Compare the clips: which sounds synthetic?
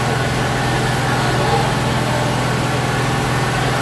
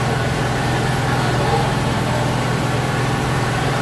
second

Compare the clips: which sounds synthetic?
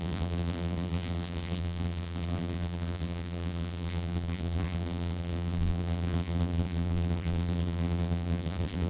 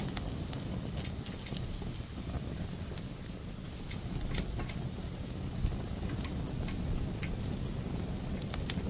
first